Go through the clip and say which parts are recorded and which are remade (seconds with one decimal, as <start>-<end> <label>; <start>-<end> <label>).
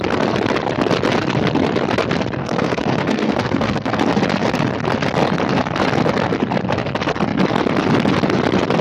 0.0-2.4 recorded; 2.4-4.0 remade; 4.0-8.8 recorded